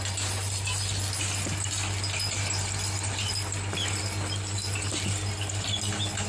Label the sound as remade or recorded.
recorded